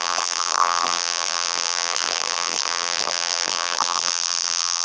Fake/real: fake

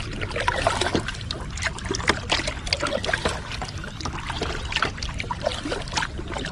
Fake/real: real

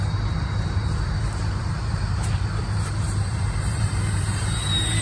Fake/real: fake